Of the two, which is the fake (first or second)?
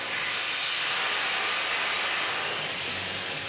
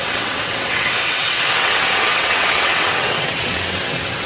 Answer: second